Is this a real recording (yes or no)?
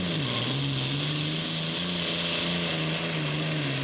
yes